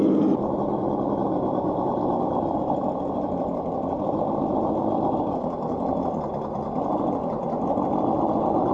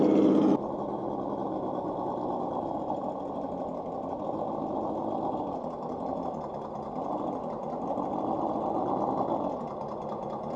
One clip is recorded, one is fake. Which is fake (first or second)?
first